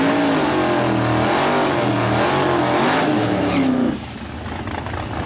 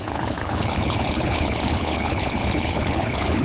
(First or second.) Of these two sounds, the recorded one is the first